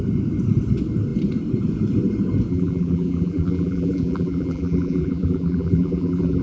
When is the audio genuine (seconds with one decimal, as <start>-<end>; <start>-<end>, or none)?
0.0-2.5